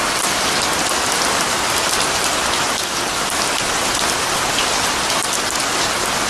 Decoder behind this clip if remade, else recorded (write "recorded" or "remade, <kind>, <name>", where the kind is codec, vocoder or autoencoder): recorded